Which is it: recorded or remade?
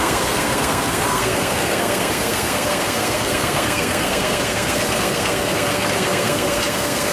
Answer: remade